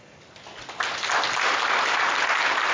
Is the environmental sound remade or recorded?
recorded